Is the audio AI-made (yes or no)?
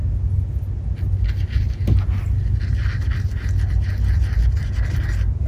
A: no